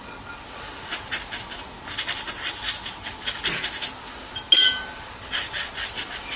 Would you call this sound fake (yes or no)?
no